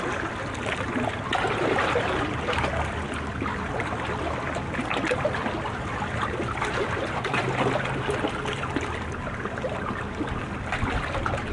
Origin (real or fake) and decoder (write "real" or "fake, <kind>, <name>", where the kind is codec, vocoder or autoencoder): real